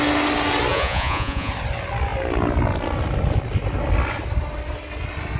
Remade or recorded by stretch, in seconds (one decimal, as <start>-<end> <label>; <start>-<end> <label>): 0.0-0.7 recorded; 0.7-1.5 remade; 1.5-5.4 recorded